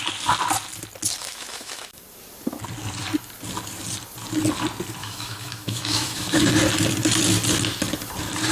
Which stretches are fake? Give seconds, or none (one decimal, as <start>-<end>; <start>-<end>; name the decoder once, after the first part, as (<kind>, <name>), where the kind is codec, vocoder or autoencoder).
1.2-2.0 (autoencoder, DAC-VAE); 5.0-6.4

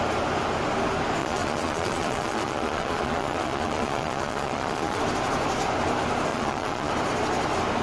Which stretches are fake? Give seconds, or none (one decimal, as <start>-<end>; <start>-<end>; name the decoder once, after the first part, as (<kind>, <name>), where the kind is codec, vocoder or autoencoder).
1.2-5.0 (vocoder, Vocos); 6.3-6.9

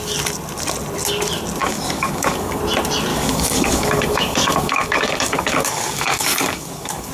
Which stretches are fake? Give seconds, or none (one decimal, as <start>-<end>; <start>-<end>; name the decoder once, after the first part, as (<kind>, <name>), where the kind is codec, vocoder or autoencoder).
1.6-2.6 (codec, DAC); 3.1-7.1

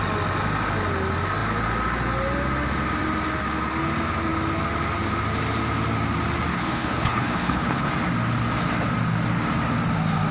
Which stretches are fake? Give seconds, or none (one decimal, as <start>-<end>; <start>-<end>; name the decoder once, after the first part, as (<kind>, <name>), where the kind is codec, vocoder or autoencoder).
6.5-7.9 (codec, HILCodec)

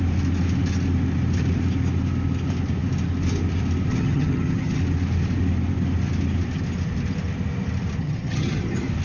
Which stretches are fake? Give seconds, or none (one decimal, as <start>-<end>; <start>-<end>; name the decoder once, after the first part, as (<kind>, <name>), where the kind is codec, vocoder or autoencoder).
3.9-4.8 (vocoder, HiFi-GAN); 8.0-8.6